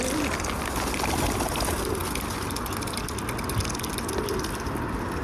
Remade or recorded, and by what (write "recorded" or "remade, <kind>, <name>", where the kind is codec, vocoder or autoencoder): recorded